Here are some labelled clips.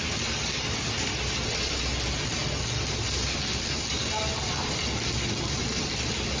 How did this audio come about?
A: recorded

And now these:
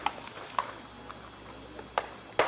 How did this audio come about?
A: recorded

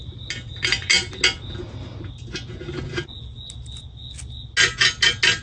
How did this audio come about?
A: recorded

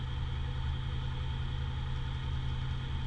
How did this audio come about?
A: recorded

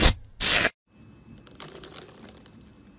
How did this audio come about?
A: recorded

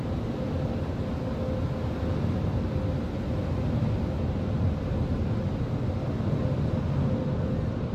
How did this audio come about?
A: recorded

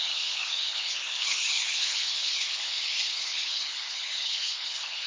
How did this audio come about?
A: remade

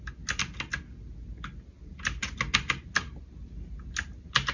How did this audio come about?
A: recorded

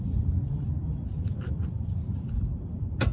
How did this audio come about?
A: recorded